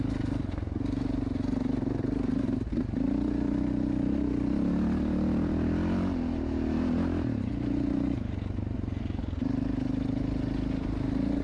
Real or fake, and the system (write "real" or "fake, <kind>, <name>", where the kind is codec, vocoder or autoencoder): real